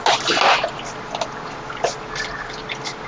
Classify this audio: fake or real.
real